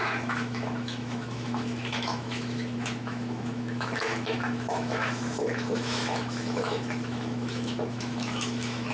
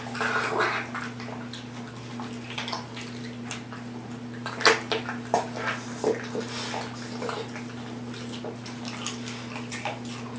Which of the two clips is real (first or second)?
second